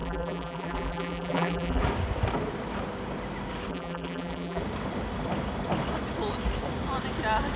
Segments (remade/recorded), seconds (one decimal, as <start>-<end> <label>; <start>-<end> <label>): 0.0-1.8 remade; 1.8-3.7 recorded; 3.7-4.6 remade; 4.6-7.6 recorded

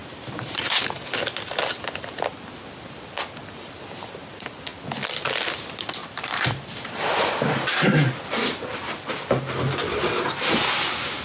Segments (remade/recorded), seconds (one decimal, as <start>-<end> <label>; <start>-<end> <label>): 0.0-0.6 remade; 0.6-6.0 recorded; 6.0-8.6 remade; 8.6-11.2 recorded

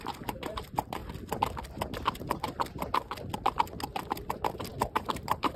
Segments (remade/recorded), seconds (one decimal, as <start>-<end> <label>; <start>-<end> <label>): 0.0-1.0 remade; 1.0-4.3 recorded; 4.3-5.6 remade

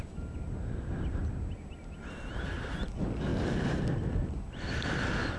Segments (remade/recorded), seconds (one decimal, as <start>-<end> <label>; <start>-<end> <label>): 0.0-3.3 recorded; 3.3-4.3 remade; 4.3-5.4 recorded

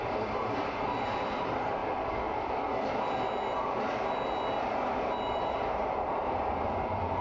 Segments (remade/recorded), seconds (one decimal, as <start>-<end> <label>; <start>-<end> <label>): 0.0-1.8 remade; 1.8-5.3 recorded; 5.3-7.2 remade

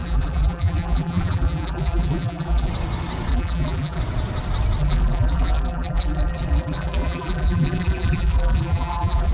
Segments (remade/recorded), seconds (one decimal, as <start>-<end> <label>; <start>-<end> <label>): 0.0-2.7 remade; 2.7-3.3 recorded; 3.3-4.0 remade; 4.0-4.8 recorded; 4.8-9.3 remade

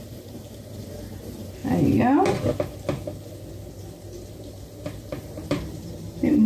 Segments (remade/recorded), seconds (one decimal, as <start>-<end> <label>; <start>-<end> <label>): 0.0-1.6 remade; 1.6-5.2 recorded; 5.2-6.5 remade